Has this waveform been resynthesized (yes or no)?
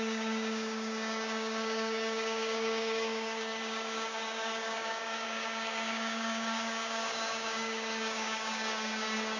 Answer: yes